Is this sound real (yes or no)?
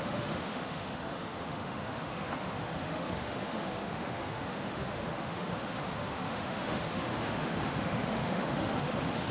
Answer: no